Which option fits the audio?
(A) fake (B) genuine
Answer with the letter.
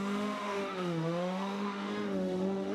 A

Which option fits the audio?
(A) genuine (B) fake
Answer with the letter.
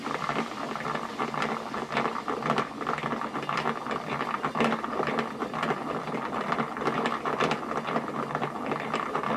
A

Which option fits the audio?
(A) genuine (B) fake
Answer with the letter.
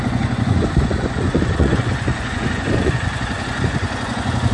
B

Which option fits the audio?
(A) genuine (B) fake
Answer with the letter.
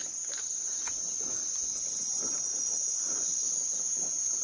A